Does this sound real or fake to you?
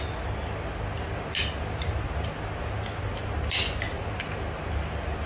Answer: real